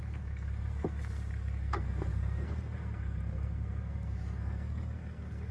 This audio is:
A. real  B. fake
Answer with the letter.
B